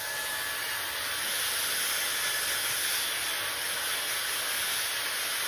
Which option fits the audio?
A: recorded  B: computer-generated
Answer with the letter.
A